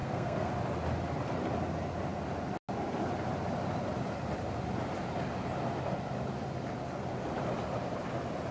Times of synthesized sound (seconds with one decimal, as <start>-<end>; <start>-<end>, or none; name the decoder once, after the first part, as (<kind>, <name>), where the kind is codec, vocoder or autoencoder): 0.0-0.5 (codec, SNAC)